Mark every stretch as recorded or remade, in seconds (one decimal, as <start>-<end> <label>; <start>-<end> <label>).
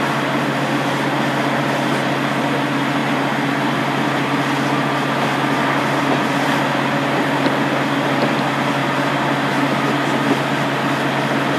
0.0-11.6 recorded